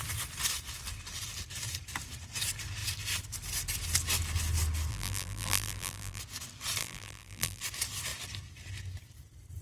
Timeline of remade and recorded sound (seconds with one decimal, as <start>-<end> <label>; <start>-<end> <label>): 0.0-4.9 recorded; 4.9-6.2 remade; 6.2-6.8 recorded; 6.8-7.6 remade; 7.6-9.6 recorded